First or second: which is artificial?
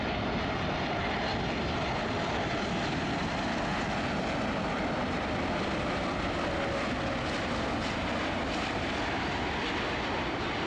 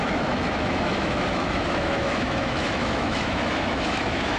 second